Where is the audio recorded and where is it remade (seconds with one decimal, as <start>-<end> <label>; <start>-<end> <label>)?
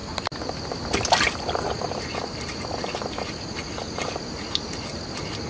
0.0-5.5 recorded